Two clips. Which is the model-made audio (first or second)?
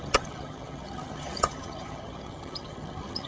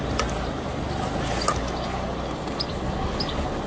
first